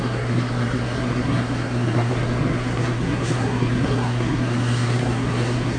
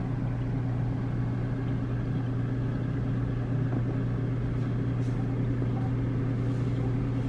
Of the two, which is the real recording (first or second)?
second